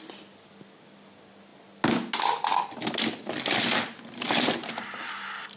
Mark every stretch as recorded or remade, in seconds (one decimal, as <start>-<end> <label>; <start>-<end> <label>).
0.0-5.6 recorded